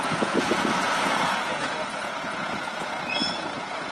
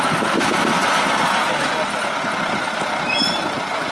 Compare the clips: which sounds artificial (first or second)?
first